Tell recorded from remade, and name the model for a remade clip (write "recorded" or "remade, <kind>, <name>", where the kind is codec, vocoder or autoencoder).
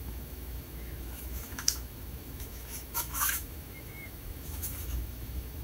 remade, autoencoder, DAC-VAE